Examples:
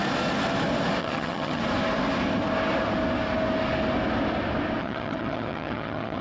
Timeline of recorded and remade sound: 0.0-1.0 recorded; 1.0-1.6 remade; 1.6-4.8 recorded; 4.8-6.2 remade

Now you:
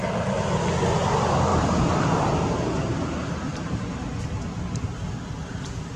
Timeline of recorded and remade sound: 0.0-1.5 recorded; 1.5-3.6 remade; 3.6-6.0 recorded

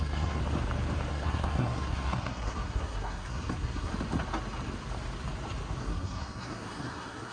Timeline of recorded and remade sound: 0.0-0.4 remade; 0.4-1.1 recorded; 1.1-3.9 remade; 3.9-5.8 recorded; 5.8-7.3 remade

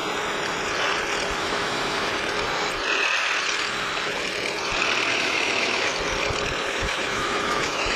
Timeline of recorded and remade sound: 0.0-1.4 recorded; 1.4-2.1 remade; 2.1-5.1 recorded; 5.1-5.9 remade; 5.9-6.7 recorded; 6.7-8.0 remade

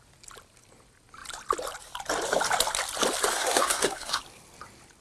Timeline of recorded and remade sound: 0.0-3.3 recorded; 3.3-4.2 remade; 4.2-5.0 recorded